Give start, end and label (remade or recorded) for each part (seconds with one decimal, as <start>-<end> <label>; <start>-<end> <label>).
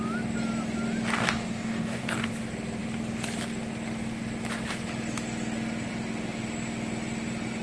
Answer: 0.0-1.2 recorded; 1.2-2.3 remade; 2.3-7.6 recorded